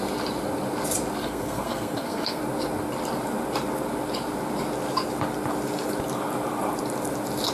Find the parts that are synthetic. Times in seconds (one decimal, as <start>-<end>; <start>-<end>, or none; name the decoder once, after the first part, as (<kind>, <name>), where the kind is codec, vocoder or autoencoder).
1.2-2.4 (codec, SNAC)